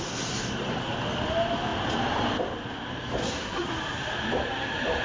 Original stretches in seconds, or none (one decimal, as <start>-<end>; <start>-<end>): 0.0-3.2; 3.7-5.0